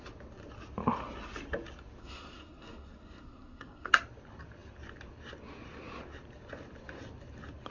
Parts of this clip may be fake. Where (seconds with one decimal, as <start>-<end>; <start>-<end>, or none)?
2.0-3.9